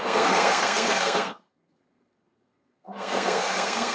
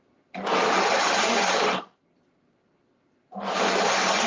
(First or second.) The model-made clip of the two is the first